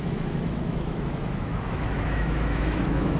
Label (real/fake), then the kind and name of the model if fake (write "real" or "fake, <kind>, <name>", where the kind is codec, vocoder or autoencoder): fake, autoencoder, DAC-VAE